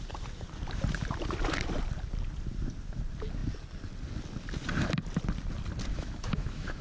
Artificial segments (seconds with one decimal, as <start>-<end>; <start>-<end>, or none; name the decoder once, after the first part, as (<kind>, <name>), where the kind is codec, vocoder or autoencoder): 5.9-6.8 (autoencoder, DAC-VAE)